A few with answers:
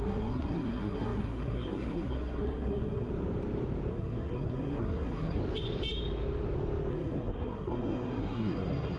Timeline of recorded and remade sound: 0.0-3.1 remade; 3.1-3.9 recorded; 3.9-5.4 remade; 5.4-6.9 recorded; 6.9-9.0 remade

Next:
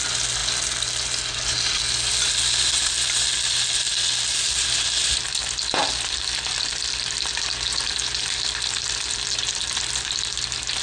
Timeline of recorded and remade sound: 0.0-10.8 recorded

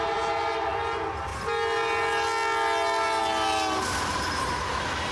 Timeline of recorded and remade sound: 0.0-5.1 recorded

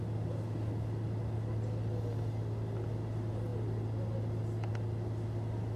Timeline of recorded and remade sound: 0.0-5.8 recorded

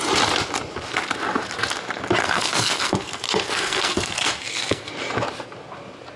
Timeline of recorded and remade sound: 0.0-2.2 recorded; 2.2-4.9 remade; 4.9-6.2 recorded

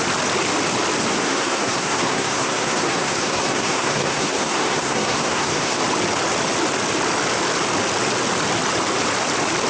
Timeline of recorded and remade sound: 0.0-1.1 recorded; 1.1-5.8 remade; 5.8-9.7 recorded

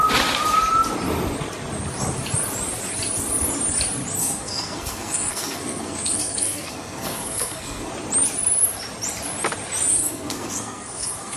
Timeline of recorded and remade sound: 0.0-4.2 recorded; 4.2-7.9 remade; 7.9-9.9 recorded; 9.9-11.4 remade

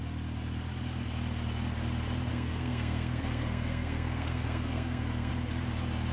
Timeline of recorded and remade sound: 0.0-2.3 recorded; 2.3-5.3 remade; 5.3-6.1 recorded